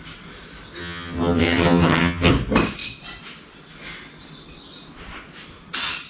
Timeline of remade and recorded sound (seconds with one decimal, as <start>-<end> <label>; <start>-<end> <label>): 0.0-0.8 recorded; 0.8-2.3 remade; 2.3-6.1 recorded